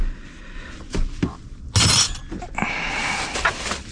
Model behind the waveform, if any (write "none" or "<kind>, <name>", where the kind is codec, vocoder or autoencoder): none